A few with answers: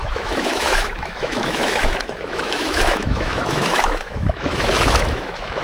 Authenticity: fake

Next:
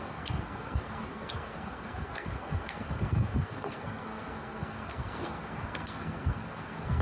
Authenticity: fake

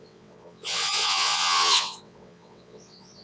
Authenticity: fake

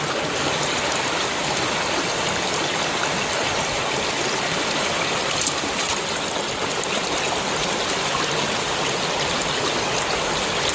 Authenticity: real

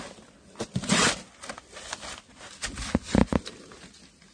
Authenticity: real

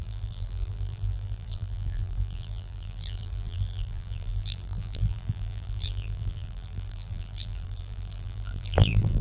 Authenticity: fake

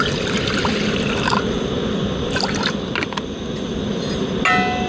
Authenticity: real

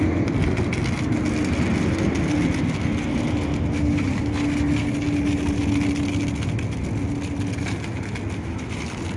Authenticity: real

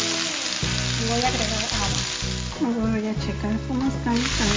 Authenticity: real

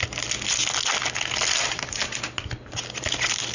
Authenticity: real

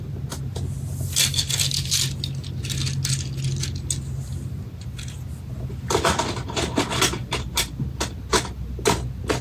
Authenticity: real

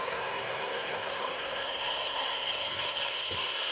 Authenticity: fake